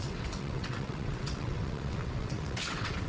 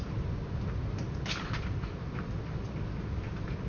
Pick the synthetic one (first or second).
first